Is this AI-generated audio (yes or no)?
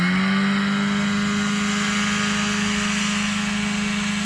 no